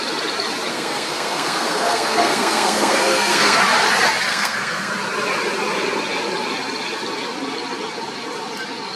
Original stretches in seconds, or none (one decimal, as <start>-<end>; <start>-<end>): 0.0-0.7; 3.6-4.3; 4.9-9.0